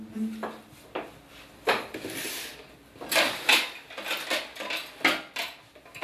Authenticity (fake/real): real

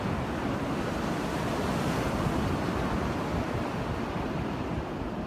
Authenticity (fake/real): real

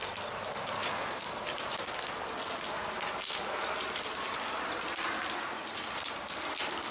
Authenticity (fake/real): real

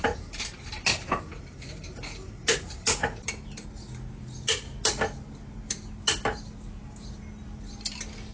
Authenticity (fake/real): real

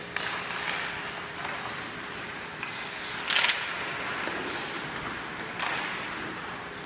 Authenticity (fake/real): real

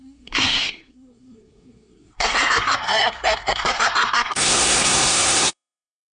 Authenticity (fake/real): fake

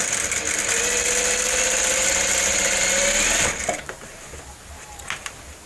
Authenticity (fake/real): real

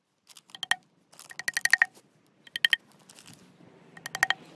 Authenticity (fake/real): real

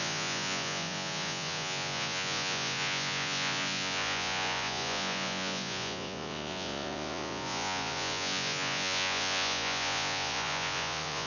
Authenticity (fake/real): fake